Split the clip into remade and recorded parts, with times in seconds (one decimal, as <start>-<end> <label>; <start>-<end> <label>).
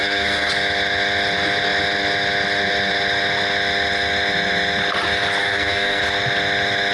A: 0.0-0.5 remade; 0.5-5.4 recorded; 5.4-6.0 remade; 6.0-6.9 recorded